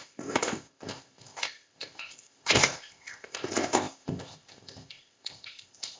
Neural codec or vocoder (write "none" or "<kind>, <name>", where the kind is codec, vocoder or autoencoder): codec, ZipCodec